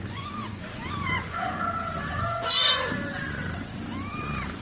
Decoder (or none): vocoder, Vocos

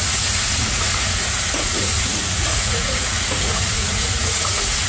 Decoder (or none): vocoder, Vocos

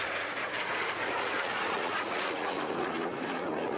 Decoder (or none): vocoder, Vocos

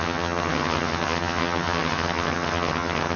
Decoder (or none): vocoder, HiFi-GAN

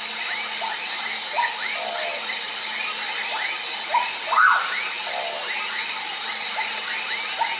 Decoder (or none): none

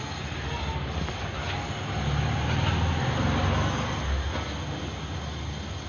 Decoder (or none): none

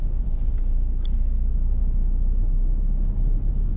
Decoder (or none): none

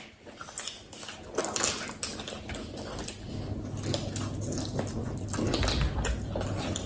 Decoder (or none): none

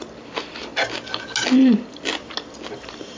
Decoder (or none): none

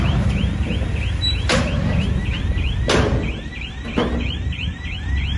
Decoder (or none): none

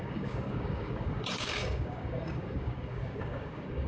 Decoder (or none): codec, DAC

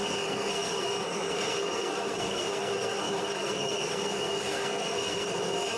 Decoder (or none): codec, SNAC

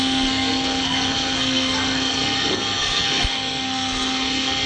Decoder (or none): codec, SNAC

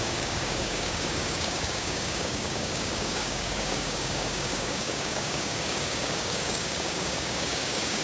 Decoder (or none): codec, DAC